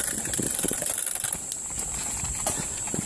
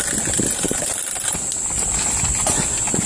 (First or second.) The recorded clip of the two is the second